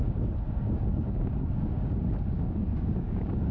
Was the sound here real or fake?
fake